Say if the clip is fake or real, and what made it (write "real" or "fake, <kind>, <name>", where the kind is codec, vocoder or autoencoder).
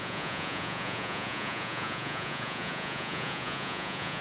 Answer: fake, vocoder, Vocos